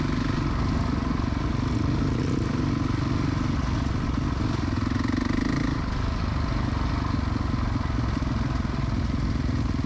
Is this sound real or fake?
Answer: real